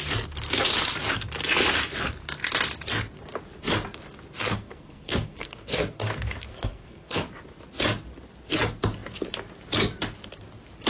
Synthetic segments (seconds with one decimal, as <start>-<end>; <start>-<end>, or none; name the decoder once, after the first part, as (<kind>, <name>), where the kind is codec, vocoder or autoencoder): 4.4-7.3 (codec, SNAC)